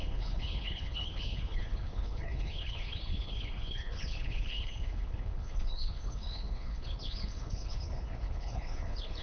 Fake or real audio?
fake